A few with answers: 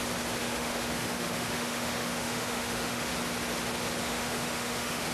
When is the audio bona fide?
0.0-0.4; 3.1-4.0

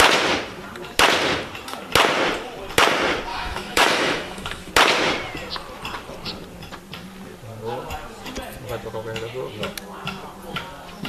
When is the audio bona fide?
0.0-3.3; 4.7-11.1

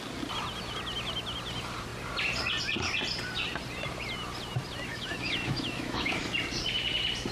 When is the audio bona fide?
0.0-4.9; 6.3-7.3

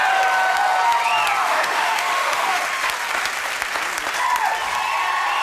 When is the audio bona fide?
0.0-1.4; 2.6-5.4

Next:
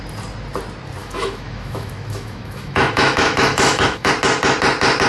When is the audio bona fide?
0.0-1.0; 4.1-5.1

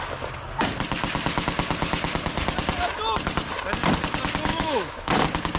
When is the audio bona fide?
0.0-4.5; 5.1-5.6

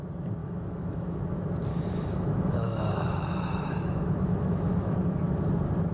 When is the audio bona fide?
0.0-0.4; 1.2-1.7; 5.2-5.9